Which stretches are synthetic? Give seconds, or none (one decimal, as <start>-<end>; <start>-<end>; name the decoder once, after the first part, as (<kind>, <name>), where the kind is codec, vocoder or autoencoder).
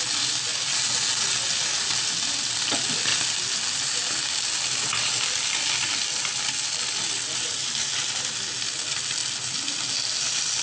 none